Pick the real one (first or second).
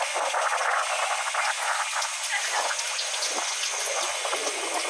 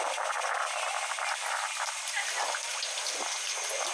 second